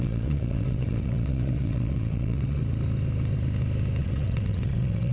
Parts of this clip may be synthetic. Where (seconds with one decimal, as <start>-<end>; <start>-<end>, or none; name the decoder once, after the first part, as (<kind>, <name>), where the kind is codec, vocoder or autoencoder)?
0.0-2.6 (vocoder, WaveNeXt); 4.0-5.1